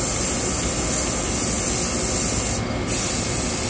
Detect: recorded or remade recorded